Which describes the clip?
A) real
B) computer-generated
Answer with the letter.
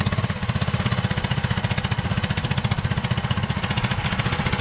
A